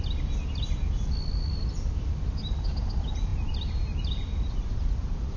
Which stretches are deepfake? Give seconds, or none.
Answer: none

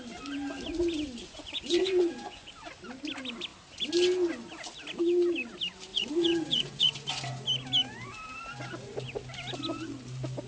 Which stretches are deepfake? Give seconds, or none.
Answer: 1.2-2.5; 5.9-7.1